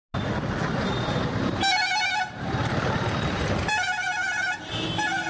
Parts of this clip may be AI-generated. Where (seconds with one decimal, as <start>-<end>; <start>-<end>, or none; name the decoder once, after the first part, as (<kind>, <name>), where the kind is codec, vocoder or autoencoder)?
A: none